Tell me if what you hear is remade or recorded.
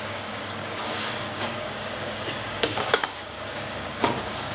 remade